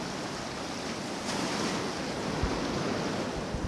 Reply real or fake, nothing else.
real